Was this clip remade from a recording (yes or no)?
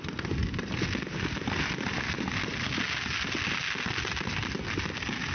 no